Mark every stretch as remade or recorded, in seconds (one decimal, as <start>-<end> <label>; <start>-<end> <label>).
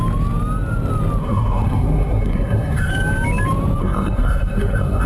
0.0-1.2 recorded; 1.2-2.9 remade; 2.9-3.8 recorded; 3.8-5.1 remade